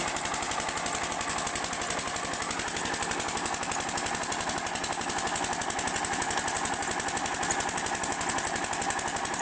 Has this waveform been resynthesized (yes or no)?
no